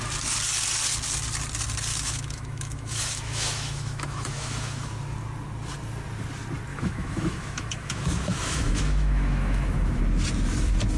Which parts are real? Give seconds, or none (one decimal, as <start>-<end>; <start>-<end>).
0.0-1.9; 4.9-6.7; 10.0-11.0